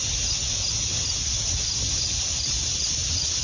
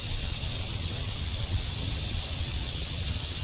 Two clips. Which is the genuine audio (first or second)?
first